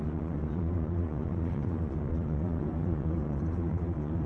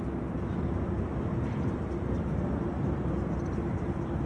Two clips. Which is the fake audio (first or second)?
first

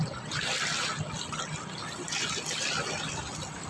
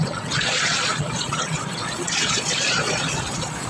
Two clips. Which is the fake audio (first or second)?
second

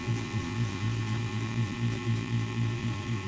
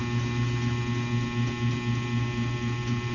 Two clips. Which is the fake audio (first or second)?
first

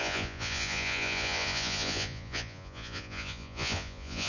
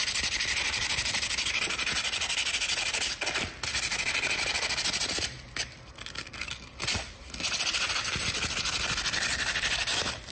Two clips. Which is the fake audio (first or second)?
first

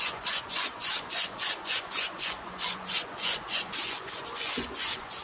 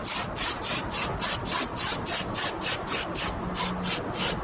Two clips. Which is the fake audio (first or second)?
first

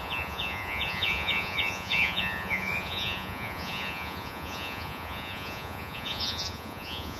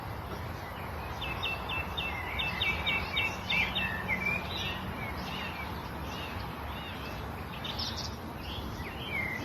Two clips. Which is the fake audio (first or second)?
first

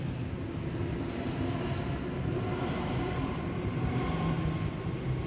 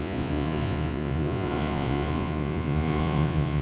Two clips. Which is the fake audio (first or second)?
second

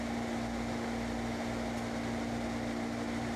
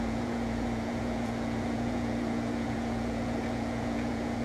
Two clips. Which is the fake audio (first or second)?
second